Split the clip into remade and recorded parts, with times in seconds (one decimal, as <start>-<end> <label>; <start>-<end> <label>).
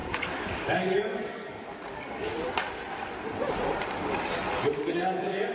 0.0-2.3 remade; 2.3-4.8 recorded; 4.8-5.5 remade